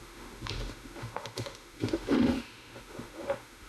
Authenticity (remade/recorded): remade